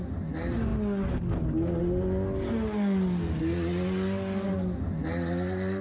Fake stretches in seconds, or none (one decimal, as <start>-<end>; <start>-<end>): none